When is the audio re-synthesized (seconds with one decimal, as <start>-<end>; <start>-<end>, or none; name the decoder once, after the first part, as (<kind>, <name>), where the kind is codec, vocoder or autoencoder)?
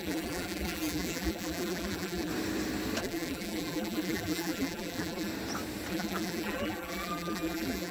0.0-2.3 (vocoder, BigVGAN v2); 3.0-5.3; 5.9-7.9